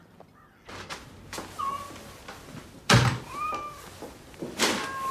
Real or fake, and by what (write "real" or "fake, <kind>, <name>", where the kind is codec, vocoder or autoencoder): real